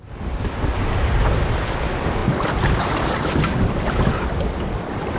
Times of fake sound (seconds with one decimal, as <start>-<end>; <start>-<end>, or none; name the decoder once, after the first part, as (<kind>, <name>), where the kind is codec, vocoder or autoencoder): none